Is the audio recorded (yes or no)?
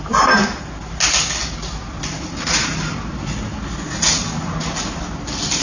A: yes